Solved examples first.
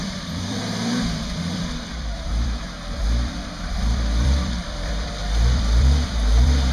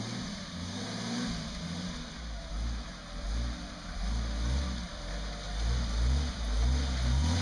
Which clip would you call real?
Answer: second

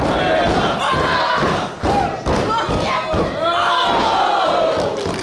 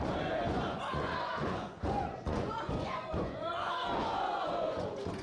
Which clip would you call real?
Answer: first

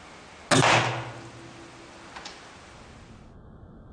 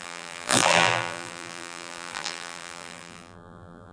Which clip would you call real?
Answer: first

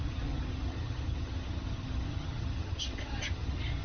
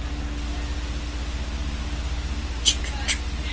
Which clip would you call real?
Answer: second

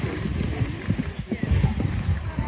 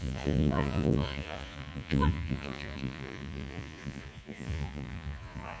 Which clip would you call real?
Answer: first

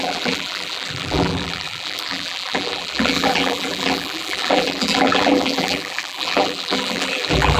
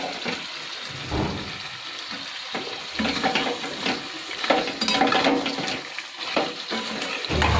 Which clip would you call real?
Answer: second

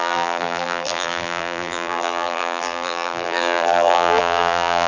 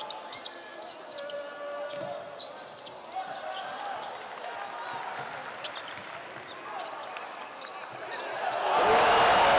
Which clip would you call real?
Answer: second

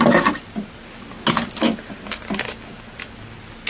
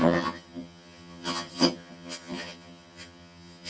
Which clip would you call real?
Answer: first